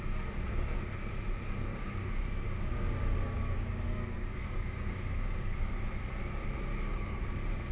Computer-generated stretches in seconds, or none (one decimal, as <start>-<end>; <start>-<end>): 1.7-5.7; 6.7-7.2